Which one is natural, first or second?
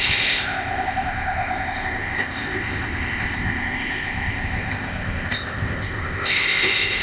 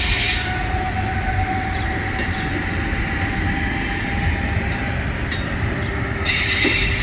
second